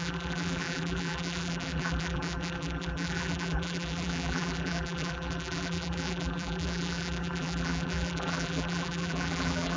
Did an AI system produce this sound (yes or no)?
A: yes